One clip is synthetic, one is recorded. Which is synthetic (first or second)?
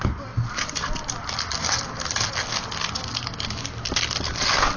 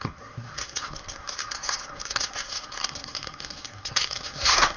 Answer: second